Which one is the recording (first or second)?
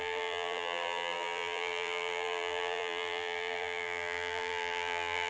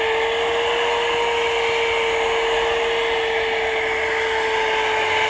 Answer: second